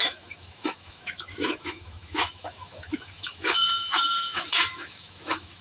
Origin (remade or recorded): remade